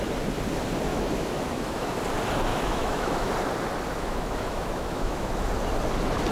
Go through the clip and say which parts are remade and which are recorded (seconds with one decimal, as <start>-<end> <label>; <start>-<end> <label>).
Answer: 0.0-0.9 recorded; 0.9-1.9 remade; 1.9-2.5 recorded; 2.5-3.3 remade; 3.3-3.9 recorded; 3.9-5.5 remade; 5.5-6.3 recorded